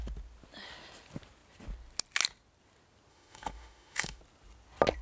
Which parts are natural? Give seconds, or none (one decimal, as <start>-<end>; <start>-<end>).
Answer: 0.0-3.1; 4.2-5.0